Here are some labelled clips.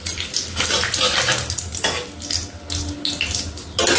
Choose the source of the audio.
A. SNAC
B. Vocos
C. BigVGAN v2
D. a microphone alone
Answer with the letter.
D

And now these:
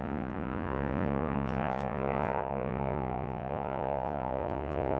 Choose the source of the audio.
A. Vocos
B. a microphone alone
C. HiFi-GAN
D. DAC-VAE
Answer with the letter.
A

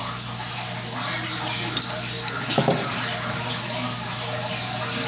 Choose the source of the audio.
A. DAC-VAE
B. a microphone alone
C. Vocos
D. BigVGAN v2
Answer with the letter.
B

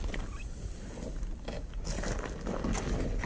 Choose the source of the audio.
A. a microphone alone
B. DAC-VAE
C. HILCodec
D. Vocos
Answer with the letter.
A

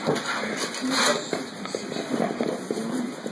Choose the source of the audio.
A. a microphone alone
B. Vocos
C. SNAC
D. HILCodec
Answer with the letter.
A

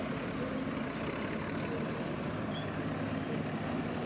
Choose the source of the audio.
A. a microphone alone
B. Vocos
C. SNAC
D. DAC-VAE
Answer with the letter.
A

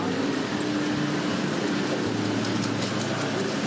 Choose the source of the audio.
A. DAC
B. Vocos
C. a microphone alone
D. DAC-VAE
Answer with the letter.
C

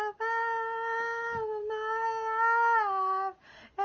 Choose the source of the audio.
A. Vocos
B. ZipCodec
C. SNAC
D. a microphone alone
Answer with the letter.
D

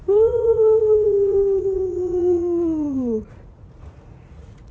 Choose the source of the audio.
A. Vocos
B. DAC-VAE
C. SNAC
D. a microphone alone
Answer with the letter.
A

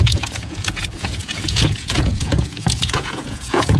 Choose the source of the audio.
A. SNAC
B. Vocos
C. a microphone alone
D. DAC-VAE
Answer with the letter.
B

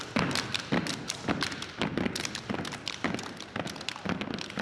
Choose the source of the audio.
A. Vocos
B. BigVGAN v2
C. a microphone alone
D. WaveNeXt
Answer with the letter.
C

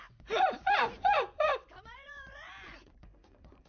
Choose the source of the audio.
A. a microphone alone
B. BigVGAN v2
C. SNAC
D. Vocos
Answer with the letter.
D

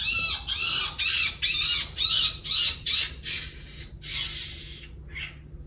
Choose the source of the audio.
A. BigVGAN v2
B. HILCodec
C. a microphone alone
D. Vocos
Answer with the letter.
C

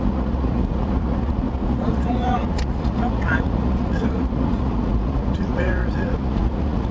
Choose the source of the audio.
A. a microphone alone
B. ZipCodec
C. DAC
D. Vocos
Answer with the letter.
D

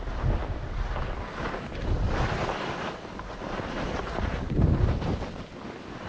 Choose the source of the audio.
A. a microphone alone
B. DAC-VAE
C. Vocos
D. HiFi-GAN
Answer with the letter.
A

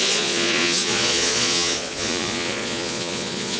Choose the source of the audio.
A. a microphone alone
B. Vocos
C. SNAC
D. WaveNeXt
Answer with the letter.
B